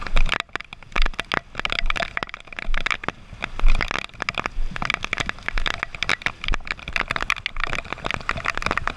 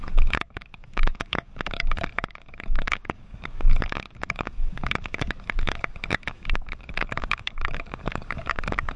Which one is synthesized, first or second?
second